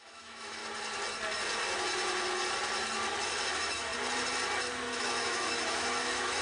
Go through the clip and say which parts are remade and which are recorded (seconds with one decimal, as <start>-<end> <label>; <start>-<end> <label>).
0.0-0.6 remade; 0.6-3.5 recorded; 3.5-3.9 remade; 3.9-5.0 recorded; 5.0-6.4 remade